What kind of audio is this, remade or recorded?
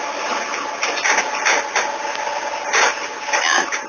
recorded